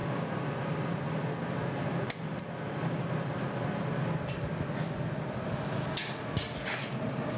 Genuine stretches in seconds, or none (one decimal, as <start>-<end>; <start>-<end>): 0.0-7.4